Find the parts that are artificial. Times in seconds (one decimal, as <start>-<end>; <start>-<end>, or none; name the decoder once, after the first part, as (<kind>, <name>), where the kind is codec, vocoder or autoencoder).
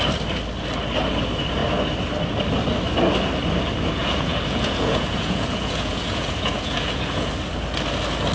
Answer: 4.0-7.3 (vocoder, Vocos)